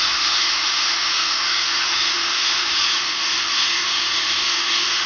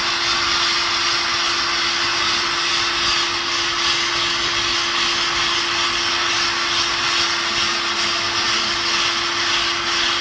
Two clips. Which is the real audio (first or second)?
second